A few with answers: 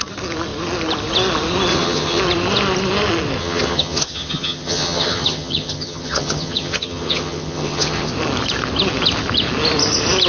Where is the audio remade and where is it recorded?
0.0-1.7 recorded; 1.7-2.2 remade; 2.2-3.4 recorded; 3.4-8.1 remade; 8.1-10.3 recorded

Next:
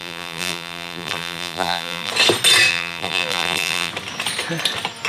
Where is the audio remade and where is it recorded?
0.0-2.1 remade; 2.1-2.7 recorded; 2.7-3.9 remade; 3.9-5.1 recorded

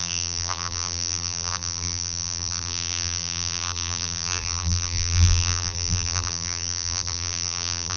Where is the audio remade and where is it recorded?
0.0-8.0 remade

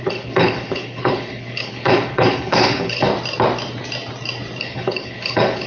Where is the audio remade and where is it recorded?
0.0-3.1 remade; 3.1-4.6 recorded; 4.6-5.7 remade

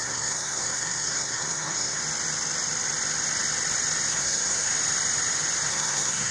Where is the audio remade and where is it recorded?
0.0-2.0 remade; 2.0-4.1 recorded; 4.1-4.7 remade; 4.7-5.7 recorded; 5.7-6.3 remade

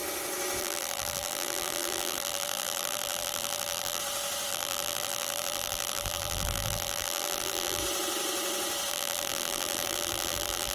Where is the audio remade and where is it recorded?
0.0-0.6 recorded; 0.6-4.0 remade; 4.0-4.5 recorded; 4.5-7.8 remade; 7.8-8.9 recorded; 8.9-10.7 remade

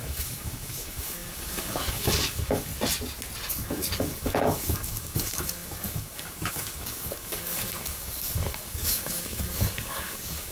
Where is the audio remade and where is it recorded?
0.0-2.7 remade; 2.7-3.5 recorded; 3.5-10.5 remade